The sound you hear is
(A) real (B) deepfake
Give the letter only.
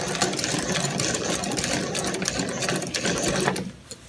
A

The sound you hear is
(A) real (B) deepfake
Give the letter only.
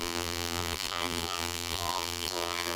B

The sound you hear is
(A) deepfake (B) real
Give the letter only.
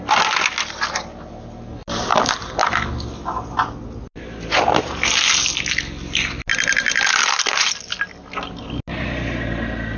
B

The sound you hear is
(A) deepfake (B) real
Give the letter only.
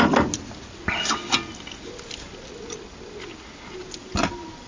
B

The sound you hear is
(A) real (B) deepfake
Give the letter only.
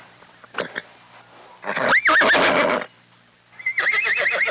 A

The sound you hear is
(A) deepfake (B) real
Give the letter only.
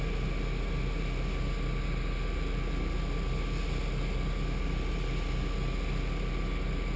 B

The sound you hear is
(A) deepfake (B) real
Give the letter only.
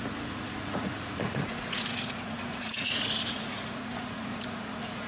A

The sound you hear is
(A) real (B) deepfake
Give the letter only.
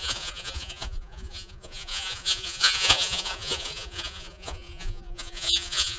B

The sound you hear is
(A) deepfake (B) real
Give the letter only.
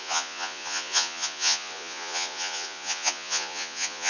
A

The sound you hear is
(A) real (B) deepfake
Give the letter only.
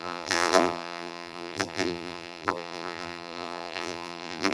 B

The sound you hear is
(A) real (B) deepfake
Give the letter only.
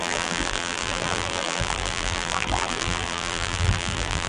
B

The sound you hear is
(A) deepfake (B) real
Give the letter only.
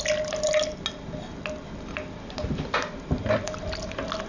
B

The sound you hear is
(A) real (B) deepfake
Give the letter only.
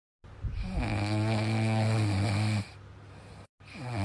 A